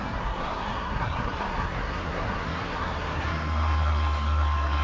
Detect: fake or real fake